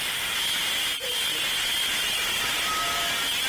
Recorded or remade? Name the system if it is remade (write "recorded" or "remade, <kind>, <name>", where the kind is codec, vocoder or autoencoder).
recorded